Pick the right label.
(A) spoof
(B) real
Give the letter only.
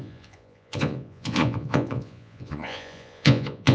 A